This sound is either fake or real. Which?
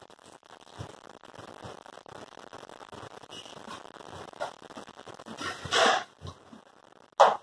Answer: real